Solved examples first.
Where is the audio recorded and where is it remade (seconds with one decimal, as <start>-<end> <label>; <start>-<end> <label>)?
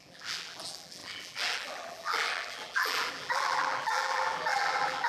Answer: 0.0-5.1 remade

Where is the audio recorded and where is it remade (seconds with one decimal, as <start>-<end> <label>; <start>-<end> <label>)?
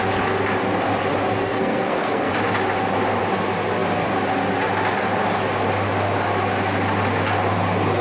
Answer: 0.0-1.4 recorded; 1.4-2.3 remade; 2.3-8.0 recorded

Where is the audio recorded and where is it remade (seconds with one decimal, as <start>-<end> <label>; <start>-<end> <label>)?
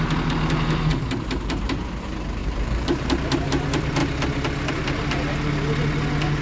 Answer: 0.0-0.9 recorded; 0.9-1.8 remade; 1.8-2.4 recorded; 2.4-3.4 remade; 3.4-6.4 recorded